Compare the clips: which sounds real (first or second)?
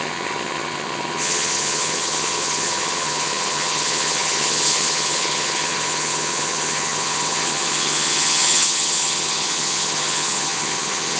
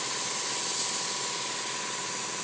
second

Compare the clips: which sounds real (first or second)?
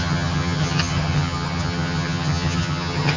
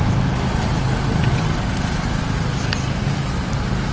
second